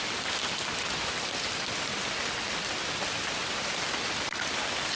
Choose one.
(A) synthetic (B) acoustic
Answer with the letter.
B